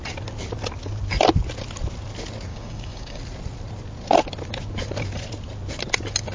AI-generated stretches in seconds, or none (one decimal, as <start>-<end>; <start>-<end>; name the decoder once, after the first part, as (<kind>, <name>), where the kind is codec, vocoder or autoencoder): 2.5-3.2 (codec, DAC)